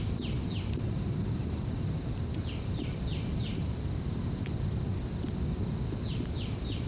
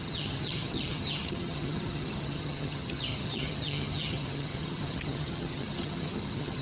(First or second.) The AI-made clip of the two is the second